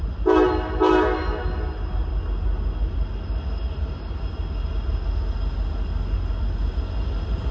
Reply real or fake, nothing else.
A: real